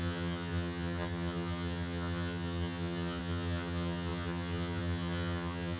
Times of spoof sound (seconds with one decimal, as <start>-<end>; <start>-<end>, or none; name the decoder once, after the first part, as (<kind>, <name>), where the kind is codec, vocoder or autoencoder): 0.0-5.8 (vocoder, HiFi-GAN)